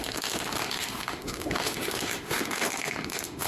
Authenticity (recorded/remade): remade